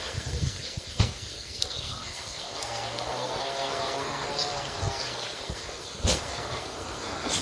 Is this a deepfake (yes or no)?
yes